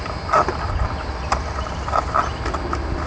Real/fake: real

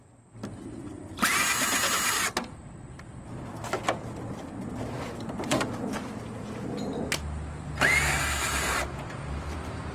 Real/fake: real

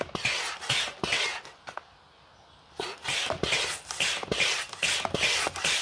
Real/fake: real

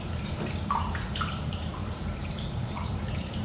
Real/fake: fake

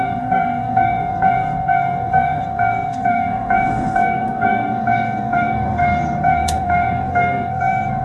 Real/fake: fake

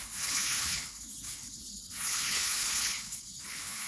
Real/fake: fake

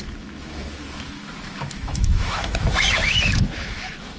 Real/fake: fake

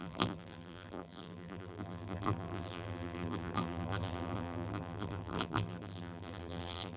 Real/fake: fake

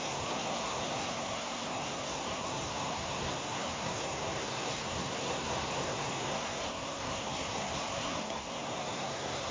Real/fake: fake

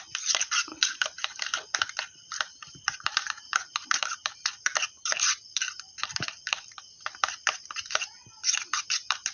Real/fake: fake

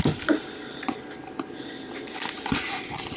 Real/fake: real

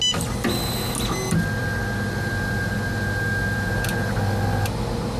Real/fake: real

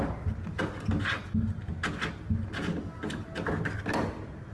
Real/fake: real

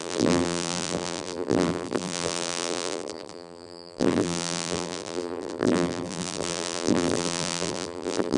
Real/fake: fake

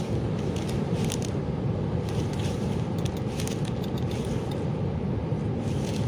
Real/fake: real